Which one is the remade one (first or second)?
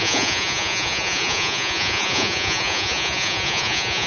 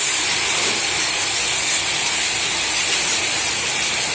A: first